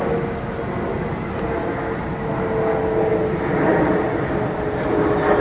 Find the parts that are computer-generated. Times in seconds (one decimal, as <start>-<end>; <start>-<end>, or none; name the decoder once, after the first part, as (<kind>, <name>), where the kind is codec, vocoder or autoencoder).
3.1-4.0 (vocoder, BigVGAN v2)